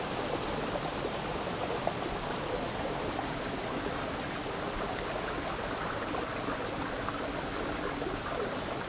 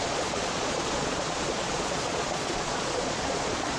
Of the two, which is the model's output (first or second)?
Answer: second